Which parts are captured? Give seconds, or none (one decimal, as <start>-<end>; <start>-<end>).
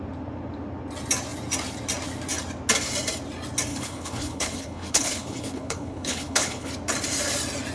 0.0-3.7; 6.7-7.7